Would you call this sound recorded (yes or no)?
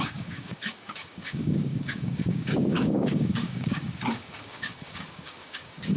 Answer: no